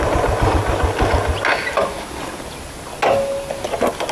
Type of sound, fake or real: real